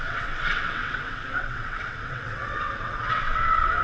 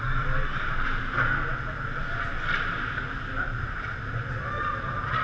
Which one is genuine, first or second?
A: second